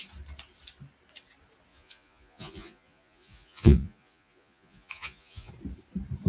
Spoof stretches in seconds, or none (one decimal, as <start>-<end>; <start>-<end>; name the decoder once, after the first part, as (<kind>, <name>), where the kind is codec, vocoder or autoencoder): 1.7-5.5 (vocoder, Vocos)